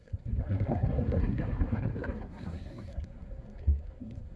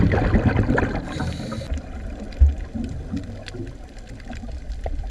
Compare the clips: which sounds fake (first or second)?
first